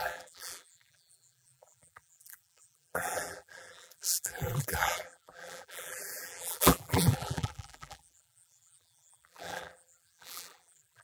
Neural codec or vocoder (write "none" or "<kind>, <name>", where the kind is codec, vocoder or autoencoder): vocoder, BigVGAN v2